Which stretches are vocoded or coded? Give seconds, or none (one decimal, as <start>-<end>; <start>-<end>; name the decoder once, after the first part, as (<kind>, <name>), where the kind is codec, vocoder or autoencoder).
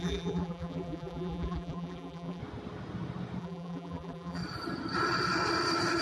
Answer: 0.0-2.4 (vocoder, BigVGAN v2); 3.4-4.4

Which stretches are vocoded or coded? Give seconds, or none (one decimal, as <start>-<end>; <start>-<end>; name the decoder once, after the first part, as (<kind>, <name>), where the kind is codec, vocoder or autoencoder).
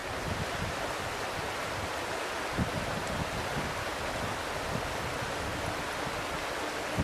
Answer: none